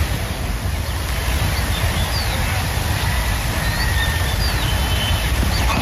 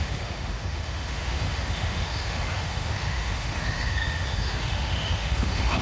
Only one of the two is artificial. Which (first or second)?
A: second